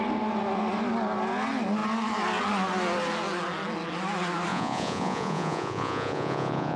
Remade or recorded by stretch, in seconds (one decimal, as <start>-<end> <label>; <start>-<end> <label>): 0.0-4.5 recorded; 4.5-6.8 remade